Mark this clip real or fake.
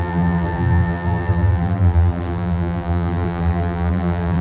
fake